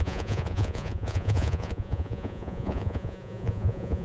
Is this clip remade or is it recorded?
remade